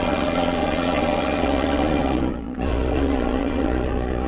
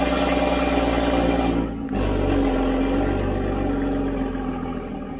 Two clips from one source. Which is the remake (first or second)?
first